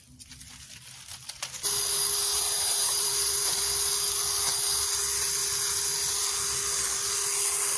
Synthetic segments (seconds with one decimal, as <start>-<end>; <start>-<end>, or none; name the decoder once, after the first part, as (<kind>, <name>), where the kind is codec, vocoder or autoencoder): 2.3-3.6 (vocoder, BigVGAN v2)